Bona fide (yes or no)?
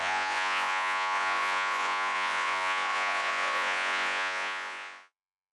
no